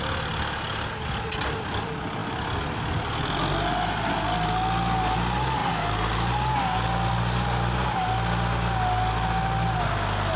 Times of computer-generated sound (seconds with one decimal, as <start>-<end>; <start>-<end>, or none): none